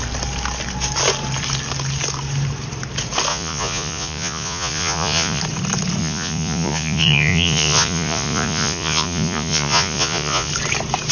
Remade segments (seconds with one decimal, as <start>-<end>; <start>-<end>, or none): 3.3-5.4; 6.0-10.5